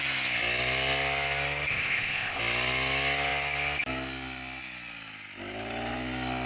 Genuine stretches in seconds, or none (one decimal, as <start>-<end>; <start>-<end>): 0.0-1.7; 2.4-6.5